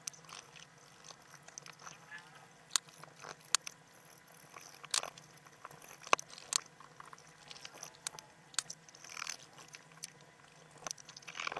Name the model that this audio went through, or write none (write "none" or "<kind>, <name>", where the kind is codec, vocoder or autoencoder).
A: none